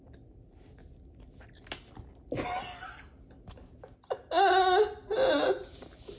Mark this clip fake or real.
real